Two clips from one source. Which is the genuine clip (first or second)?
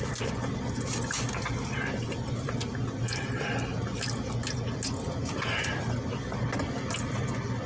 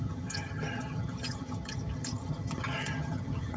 first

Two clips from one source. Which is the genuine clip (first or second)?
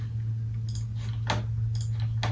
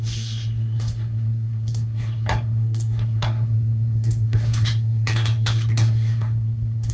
first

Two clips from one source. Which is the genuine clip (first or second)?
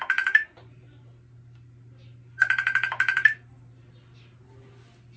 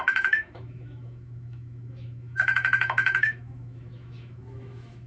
first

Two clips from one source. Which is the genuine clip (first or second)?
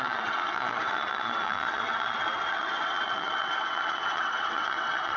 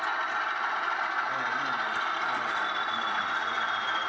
second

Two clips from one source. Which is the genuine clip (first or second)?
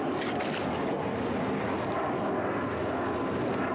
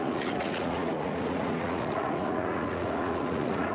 first